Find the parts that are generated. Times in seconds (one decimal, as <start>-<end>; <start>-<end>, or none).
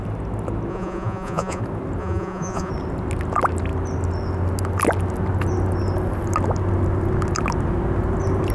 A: 0.7-1.6; 2.0-2.7